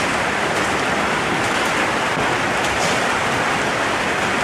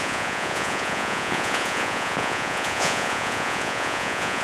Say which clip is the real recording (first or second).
first